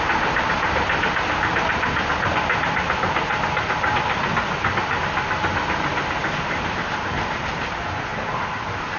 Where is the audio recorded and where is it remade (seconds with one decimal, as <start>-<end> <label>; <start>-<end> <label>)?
0.0-4.4 recorded; 4.4-5.0 remade; 5.0-8.1 recorded; 8.1-9.0 remade